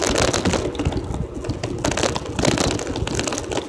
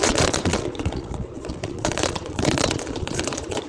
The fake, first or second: second